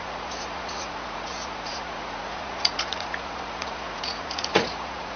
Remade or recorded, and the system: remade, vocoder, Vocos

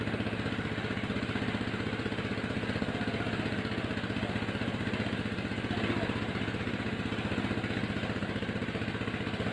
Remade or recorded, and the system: recorded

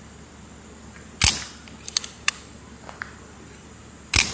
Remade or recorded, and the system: recorded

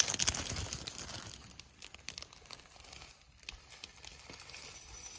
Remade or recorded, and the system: recorded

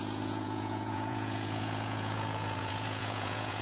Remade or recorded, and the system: remade, vocoder, Vocos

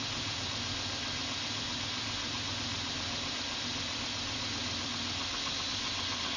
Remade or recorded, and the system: recorded